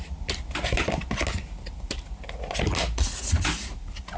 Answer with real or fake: real